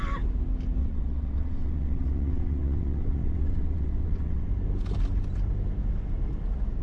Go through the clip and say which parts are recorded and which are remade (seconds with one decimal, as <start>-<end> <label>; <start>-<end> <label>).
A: 0.0-0.8 recorded; 0.8-4.5 remade; 4.5-6.8 recorded